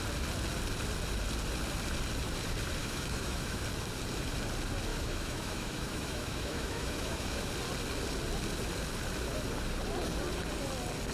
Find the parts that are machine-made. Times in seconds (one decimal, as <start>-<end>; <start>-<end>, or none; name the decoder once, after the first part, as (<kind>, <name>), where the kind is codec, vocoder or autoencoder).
2.8-3.6 (autoencoder, DAC-VAE); 4.9-7.5